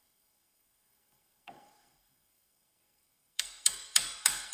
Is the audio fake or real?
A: fake